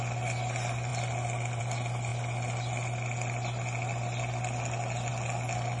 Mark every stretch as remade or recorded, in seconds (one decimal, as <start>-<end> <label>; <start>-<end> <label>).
0.0-5.8 recorded